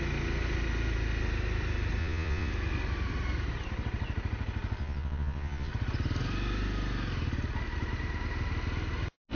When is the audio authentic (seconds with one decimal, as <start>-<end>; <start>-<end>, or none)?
0.0-2.0; 2.5-4.8; 5.7-9.4